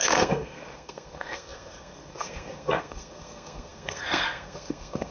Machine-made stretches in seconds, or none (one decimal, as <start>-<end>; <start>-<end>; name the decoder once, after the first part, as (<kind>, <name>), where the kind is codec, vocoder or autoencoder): 0.0-5.1 (codec, SNAC)